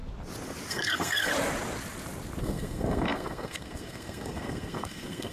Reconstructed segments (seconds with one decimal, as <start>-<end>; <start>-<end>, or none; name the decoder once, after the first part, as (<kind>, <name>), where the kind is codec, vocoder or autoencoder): 0.7-1.3 (codec, SNAC); 2.4-5.3